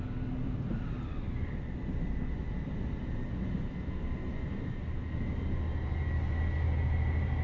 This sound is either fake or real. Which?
real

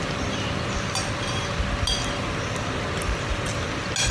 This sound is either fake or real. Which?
real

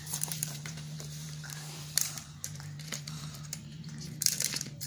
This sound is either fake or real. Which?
fake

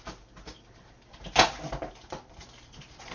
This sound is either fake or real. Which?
real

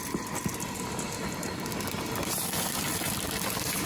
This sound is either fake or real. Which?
real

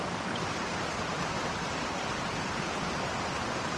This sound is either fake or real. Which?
fake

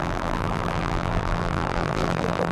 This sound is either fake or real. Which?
fake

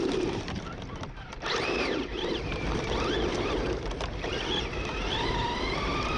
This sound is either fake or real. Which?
fake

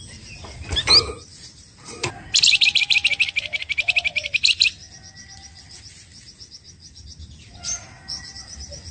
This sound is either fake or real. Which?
real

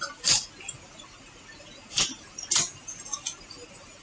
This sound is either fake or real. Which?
real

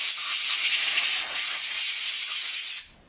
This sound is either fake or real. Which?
fake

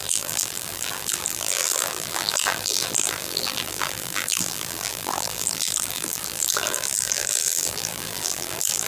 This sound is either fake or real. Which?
fake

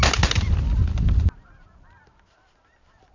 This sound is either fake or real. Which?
real